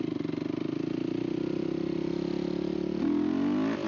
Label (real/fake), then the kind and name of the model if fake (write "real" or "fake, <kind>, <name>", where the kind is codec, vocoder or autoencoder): real